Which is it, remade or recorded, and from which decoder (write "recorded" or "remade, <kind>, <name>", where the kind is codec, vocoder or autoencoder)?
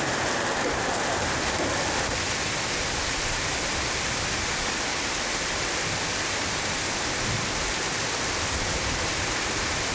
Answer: recorded